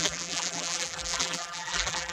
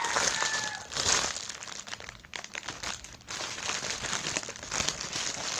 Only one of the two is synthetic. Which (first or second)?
first